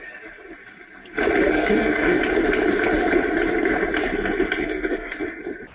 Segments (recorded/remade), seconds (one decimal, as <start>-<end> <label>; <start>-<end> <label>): 0.0-1.5 recorded; 1.5-2.2 remade; 2.2-4.6 recorded; 4.6-5.2 remade; 5.2-5.7 recorded